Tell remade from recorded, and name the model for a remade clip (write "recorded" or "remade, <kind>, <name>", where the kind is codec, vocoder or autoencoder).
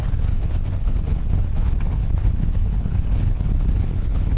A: remade, codec, HILCodec